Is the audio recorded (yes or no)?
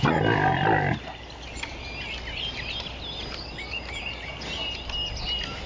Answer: yes